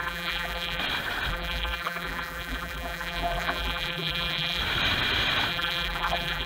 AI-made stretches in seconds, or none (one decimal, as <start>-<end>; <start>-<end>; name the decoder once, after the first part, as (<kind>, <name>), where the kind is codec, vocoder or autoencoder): 0.0-0.8 (vocoder, BigVGAN v2); 1.3-4.6; 5.5-6.5